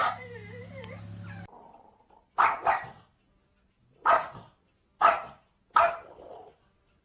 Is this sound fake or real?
real